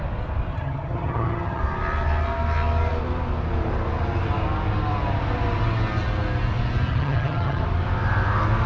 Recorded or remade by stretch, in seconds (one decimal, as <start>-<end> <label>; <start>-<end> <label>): 0.0-0.5 recorded; 0.5-1.6 remade; 1.6-6.9 recorded; 6.9-7.6 remade; 7.6-8.7 recorded